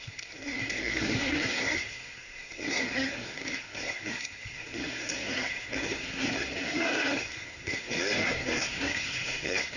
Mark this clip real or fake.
fake